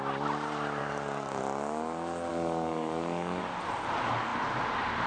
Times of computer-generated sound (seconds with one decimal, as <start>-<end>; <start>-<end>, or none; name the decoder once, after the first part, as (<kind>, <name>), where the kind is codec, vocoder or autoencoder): 0.8-1.4 (codec, DAC); 2.3-3.4